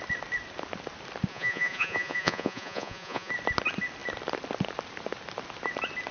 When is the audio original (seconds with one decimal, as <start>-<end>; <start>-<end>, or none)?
0.0-1.3; 3.3-6.1